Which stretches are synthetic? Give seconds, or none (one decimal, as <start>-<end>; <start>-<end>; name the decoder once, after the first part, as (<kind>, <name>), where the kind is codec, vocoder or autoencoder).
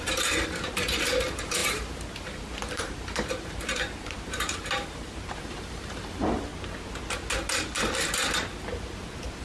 0.0-6.5 (vocoder, BigVGAN v2)